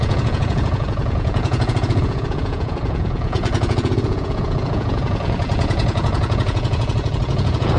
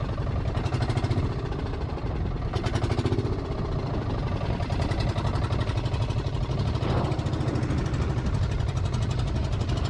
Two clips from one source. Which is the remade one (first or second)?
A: first